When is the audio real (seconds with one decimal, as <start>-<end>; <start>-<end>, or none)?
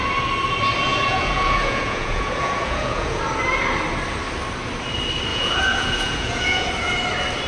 0.0-0.9; 3.2-5.3; 6.7-7.5